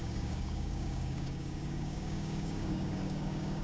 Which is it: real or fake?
fake